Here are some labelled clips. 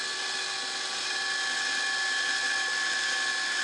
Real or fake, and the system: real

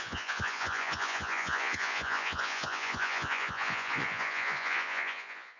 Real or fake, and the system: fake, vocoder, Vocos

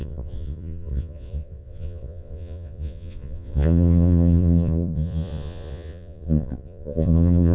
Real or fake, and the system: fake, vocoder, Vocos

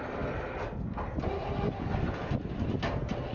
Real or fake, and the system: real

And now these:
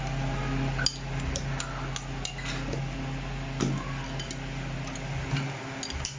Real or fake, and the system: real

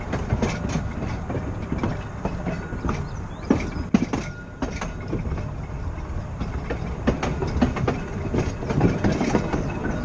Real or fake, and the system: real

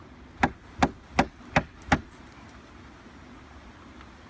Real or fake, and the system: real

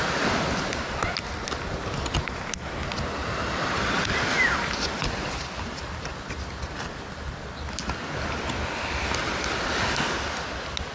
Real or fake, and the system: real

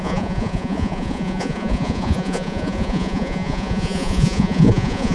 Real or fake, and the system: fake, vocoder, Vocos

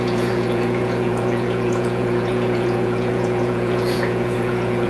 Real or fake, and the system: fake, vocoder, Vocos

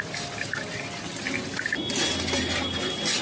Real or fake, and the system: real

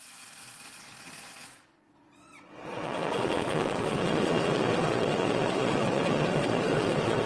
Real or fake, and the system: fake, vocoder, Vocos